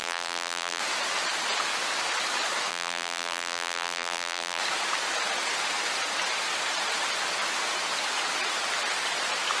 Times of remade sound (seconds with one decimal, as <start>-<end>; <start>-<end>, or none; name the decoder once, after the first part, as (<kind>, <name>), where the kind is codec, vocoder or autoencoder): 0.0-0.8 (vocoder, BigVGAN v2); 2.7-4.6